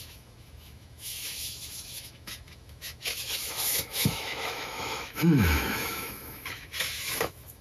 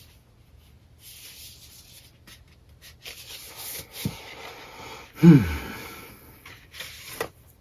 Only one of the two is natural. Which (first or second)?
second